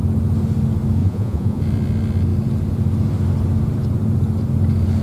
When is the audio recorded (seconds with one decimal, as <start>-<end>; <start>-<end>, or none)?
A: 0.0-1.0; 1.6-5.0